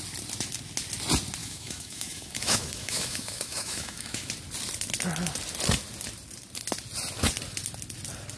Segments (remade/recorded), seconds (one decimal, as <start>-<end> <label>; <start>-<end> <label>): 0.0-1.4 recorded; 1.4-4.3 remade; 4.3-8.4 recorded